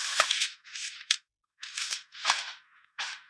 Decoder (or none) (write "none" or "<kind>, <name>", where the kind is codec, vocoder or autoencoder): autoencoder, DAC-VAE